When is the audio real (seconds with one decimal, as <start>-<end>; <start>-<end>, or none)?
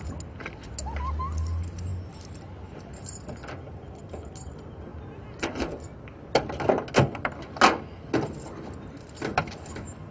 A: 0.0-10.1